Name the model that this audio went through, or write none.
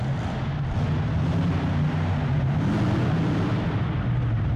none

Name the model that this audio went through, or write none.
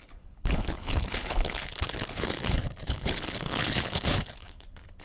codec, HILCodec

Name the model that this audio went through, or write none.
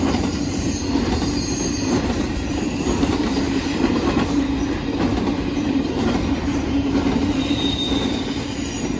vocoder, BigVGAN v2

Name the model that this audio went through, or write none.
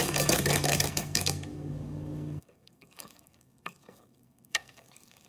codec, SNAC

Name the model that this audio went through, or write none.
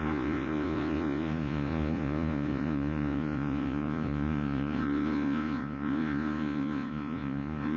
vocoder, Vocos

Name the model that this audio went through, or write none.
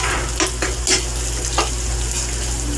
none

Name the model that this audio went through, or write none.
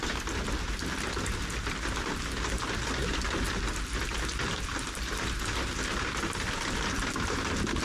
none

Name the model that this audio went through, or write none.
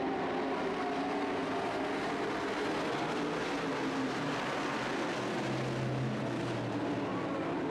none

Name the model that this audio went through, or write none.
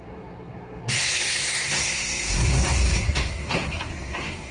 codec, SNAC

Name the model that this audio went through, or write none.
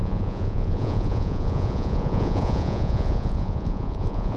vocoder, Vocos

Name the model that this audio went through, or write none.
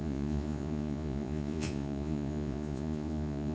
vocoder, Vocos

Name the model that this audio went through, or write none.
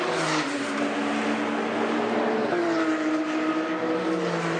none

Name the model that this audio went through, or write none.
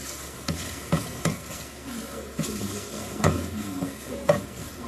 codec, SNAC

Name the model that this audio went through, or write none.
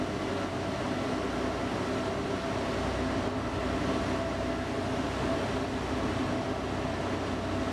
none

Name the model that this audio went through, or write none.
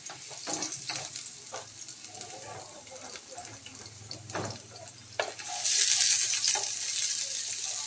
none